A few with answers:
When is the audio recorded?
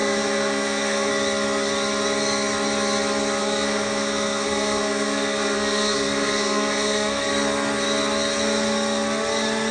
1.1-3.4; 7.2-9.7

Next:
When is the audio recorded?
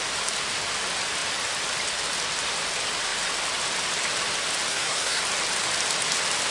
0.0-4.7; 5.2-6.5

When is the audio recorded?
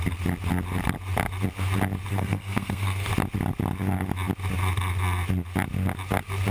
0.0-2.1; 3.1-6.5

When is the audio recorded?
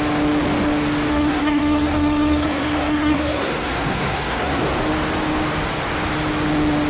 0.0-1.1; 4.6-6.9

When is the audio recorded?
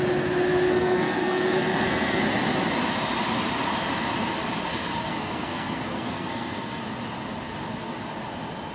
0.0-0.7; 2.2-4.7; 6.8-8.7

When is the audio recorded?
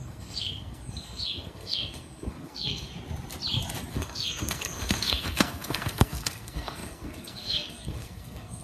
2.9-3.9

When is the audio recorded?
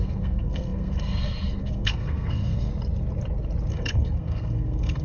2.7-3.7